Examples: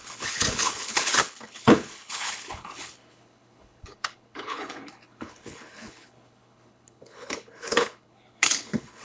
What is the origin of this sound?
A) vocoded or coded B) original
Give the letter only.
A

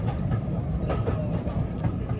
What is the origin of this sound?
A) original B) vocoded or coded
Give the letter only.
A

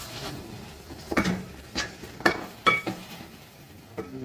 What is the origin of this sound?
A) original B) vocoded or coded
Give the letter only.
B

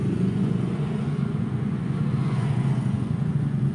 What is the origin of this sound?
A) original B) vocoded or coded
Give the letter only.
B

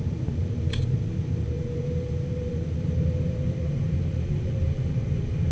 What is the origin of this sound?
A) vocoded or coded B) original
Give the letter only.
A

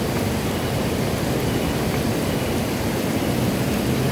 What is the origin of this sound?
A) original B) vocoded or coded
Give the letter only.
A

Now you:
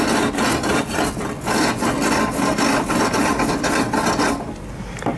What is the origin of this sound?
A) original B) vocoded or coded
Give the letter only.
A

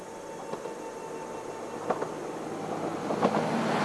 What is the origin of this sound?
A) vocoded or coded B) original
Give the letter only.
B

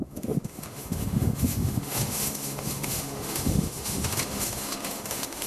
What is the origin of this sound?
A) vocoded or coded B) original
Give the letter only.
A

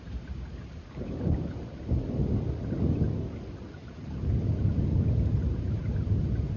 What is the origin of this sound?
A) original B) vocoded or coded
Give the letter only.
A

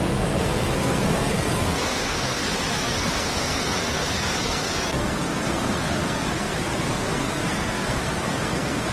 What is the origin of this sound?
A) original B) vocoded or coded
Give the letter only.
B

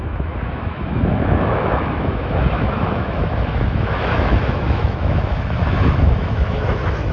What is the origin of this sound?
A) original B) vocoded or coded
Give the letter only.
B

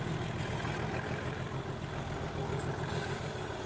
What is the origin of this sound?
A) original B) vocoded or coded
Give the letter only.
A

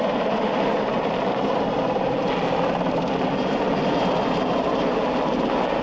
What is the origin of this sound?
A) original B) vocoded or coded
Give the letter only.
A